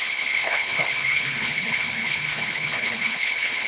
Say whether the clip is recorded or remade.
remade